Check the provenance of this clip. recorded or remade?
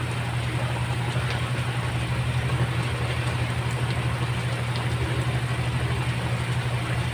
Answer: recorded